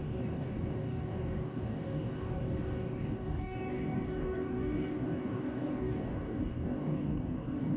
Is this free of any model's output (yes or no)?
no